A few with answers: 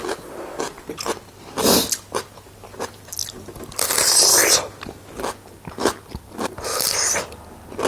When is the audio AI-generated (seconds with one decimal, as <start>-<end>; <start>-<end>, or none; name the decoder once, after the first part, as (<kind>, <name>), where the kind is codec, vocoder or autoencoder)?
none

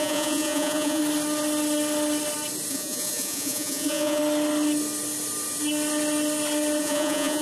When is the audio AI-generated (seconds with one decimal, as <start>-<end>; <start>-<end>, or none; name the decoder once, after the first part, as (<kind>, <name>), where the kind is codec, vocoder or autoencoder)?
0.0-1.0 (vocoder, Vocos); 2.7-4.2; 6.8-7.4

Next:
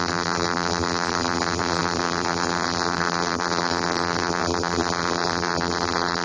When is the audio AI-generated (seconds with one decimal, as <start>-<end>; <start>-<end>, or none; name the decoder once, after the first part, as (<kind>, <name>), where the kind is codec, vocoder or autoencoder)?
0.0-6.2 (vocoder, BigVGAN v2)

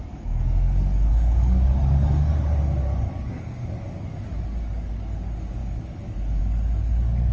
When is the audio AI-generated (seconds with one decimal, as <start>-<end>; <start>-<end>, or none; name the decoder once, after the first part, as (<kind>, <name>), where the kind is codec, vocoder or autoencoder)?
0.0-2.3 (codec, DAC); 2.8-7.3

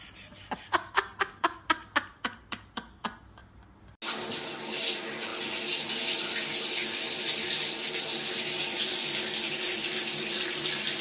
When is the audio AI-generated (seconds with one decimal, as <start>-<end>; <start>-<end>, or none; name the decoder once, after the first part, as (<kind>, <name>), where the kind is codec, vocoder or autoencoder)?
none